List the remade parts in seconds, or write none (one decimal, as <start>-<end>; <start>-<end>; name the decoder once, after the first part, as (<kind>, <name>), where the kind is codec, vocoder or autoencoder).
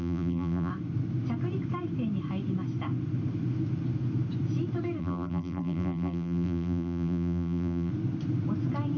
0.0-0.7 (vocoder, BigVGAN v2); 5.0-7.9